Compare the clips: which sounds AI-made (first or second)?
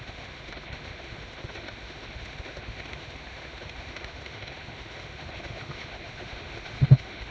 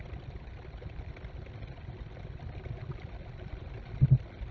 first